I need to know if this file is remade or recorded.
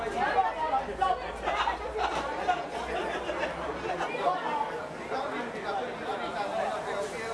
recorded